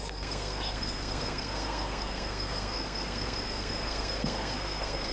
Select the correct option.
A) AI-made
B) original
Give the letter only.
A